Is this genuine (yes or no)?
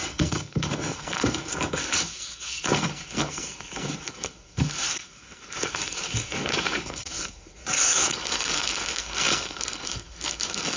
no